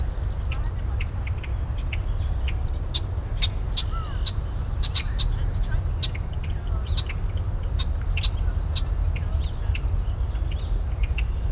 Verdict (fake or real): real